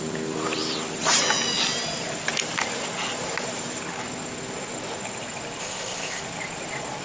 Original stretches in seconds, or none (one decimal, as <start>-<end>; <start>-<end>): 0.0-5.6; 6.2-7.0